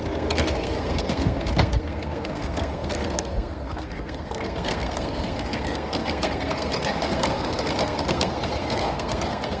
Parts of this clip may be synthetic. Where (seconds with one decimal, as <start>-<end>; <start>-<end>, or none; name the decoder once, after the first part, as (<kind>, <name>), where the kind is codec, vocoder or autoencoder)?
0.0-9.6 (codec, SNAC)